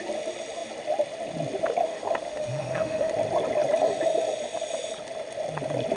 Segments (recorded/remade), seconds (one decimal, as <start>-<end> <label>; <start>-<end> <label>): 0.0-1.8 recorded; 1.8-3.1 remade; 3.1-6.0 recorded